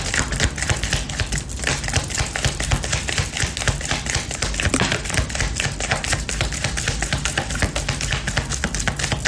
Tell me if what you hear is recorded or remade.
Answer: recorded